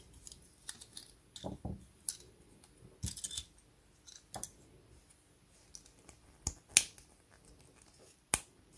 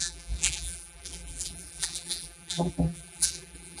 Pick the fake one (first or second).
second